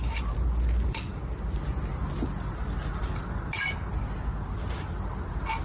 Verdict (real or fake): real